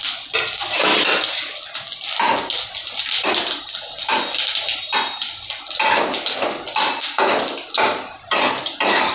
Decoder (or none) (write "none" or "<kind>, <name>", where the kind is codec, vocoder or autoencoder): none